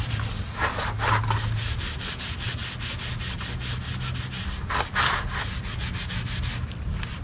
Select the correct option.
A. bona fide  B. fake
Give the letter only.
A